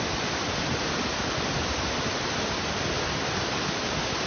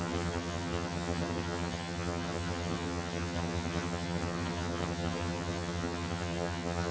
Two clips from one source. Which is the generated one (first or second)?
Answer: second